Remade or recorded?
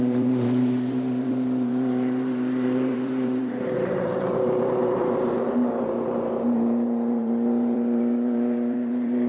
remade